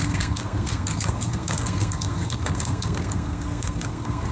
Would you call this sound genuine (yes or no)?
no